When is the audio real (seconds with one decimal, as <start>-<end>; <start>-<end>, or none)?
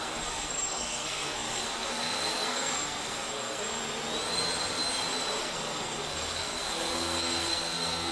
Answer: 3.8-5.4